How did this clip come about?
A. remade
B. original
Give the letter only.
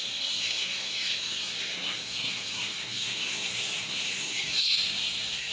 A